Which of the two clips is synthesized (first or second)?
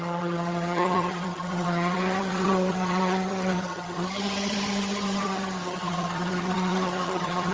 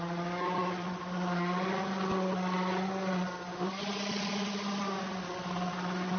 first